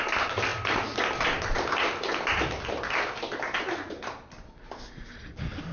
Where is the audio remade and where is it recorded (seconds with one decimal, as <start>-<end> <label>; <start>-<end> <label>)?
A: 0.0-5.7 recorded